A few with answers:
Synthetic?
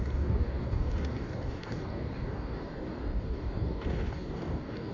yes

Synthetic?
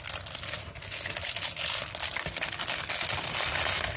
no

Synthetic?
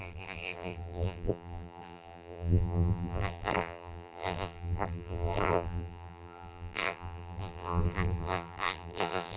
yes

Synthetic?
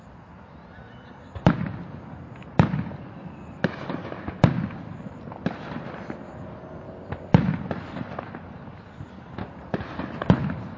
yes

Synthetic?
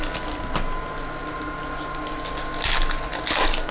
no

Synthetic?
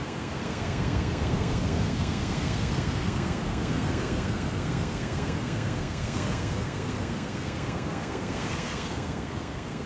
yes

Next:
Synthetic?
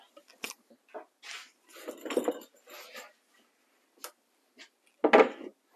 no